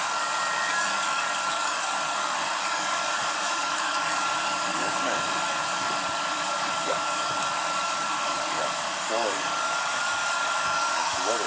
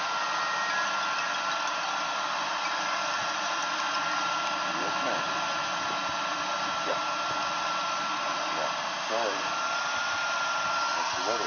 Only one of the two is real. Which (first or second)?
second